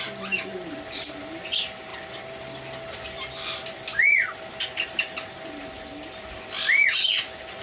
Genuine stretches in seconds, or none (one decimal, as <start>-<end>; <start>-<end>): 0.0-7.6